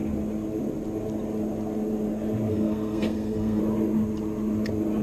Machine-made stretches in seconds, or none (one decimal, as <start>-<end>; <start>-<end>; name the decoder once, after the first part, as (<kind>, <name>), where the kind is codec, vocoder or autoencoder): 2.5-3.6 (codec, SNAC)